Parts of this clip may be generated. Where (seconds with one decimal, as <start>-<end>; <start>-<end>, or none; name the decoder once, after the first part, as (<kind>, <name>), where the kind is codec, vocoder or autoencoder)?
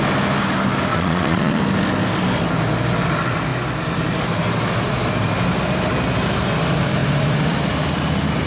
0.9-1.6 (vocoder, Vocos)